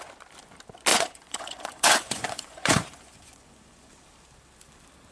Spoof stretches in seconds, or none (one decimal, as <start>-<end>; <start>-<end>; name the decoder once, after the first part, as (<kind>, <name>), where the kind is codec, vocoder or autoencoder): 0.9-3.9 (vocoder, Vocos)